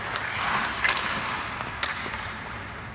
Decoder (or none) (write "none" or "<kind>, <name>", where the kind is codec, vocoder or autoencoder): none